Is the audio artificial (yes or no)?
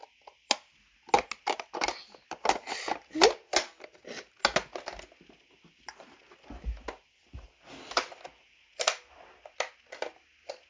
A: no